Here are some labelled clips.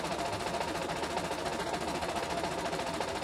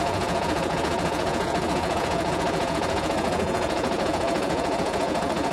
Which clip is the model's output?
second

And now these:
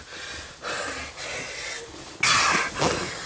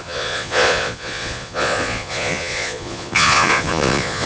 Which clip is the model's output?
second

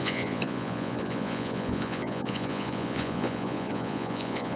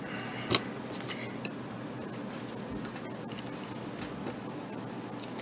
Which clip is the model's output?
first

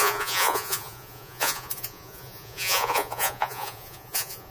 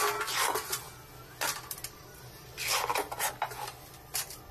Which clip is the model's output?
first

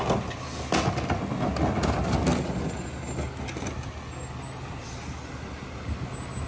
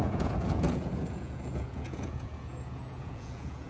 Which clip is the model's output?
second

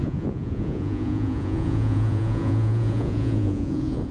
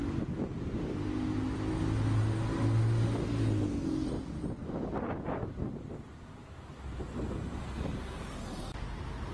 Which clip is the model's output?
first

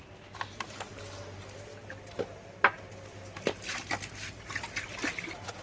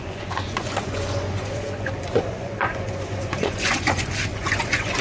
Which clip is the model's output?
second